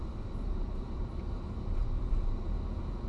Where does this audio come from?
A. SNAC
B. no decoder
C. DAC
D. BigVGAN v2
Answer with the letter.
B